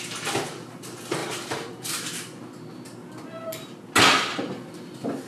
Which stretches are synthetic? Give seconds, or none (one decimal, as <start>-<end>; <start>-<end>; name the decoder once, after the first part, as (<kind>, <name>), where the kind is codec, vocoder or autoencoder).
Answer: 1.2-2.4 (vocoder, BigVGAN v2)